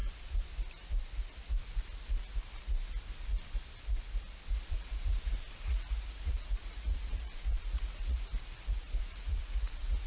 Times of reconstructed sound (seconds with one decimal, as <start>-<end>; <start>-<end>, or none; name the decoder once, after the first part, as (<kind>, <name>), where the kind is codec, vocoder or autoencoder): 4.5-8.3 (vocoder, Vocos); 9.0-10.1

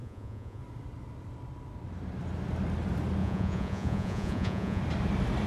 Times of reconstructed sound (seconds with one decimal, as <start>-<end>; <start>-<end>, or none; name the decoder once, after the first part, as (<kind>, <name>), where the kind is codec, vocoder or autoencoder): 0.0-0.6 (vocoder, Vocos); 3.2-4.8

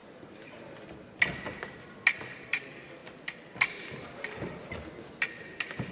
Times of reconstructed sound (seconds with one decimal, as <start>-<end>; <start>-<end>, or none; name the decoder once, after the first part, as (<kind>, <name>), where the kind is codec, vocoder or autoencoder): none

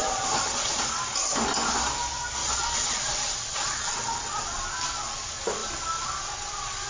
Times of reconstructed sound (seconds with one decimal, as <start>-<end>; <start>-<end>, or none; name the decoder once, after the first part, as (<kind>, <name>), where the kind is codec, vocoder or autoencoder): 0.0-0.9 (vocoder, Vocos); 2.4-4.6

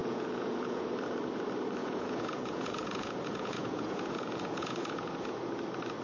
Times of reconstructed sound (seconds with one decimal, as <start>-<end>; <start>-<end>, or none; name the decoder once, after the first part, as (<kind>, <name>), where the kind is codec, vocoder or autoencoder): 0.0-0.9 (vocoder, Vocos); 1.8-5.4